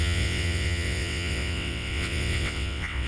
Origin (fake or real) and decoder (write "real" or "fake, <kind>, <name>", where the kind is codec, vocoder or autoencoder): fake, vocoder, WaveNeXt